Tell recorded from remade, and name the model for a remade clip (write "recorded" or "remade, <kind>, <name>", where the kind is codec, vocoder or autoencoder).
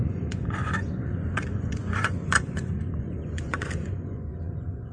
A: remade, vocoder, Vocos